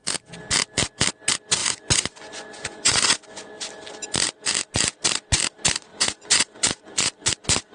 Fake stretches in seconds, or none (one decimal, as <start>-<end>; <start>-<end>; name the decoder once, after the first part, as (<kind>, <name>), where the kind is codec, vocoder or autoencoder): 1.6-3.5 (vocoder, Vocos); 5.9-7.3